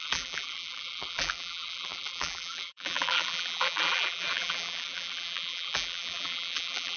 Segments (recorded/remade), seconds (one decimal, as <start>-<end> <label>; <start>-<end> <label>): 0.0-7.0 remade